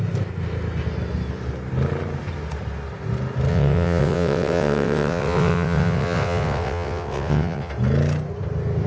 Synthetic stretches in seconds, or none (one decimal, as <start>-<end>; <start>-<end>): 3.5-7.7